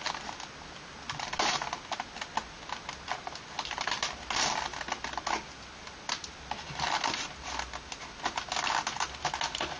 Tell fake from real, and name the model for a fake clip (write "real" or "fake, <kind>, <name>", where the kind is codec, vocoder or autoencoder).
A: real